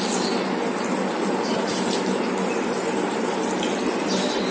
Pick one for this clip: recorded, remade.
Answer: recorded